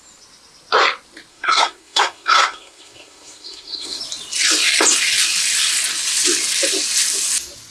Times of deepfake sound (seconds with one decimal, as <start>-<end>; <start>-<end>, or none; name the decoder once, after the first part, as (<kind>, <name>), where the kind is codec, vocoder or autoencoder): 1.3-4.0 (codec, SNAC)